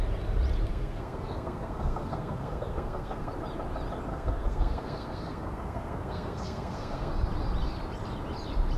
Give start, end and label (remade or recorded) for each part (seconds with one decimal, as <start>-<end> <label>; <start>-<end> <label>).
0.0-0.7 recorded; 0.7-3.3 remade; 3.3-4.1 recorded; 4.1-7.1 remade; 7.1-8.8 recorded